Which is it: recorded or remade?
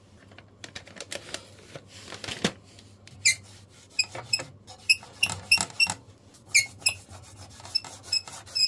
recorded